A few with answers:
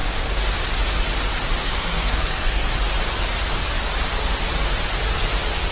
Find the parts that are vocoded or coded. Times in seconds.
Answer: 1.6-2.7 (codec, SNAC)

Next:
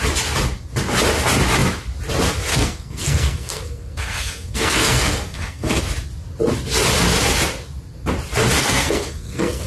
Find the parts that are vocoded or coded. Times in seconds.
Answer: 2.5-5.8 (codec, SNAC); 8.6-9.7

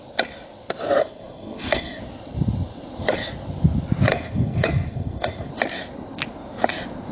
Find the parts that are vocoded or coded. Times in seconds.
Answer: 1.0-2.0 (codec, SNAC); 4.1-5.5

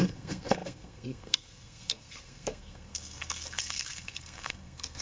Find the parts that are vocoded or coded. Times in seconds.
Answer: 0.0-5.0 (codec, SNAC)